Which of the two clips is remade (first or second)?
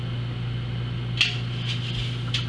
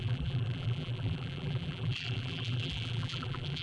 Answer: second